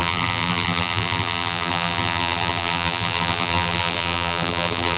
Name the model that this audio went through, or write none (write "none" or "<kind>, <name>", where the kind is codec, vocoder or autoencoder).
vocoder, BigVGAN v2